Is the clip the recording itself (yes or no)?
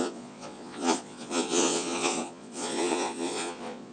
no